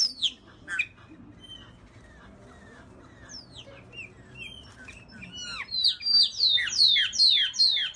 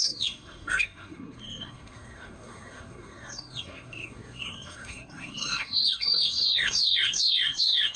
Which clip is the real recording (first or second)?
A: first